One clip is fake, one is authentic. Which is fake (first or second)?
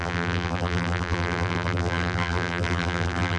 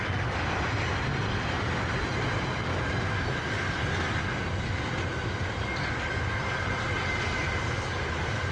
first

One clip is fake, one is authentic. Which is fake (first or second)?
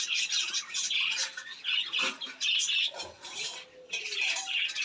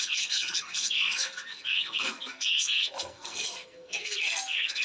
second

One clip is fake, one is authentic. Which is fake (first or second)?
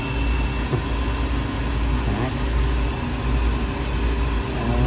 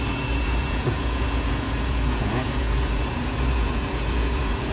second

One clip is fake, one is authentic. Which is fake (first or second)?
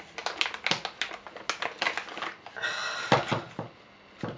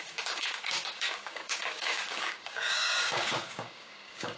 second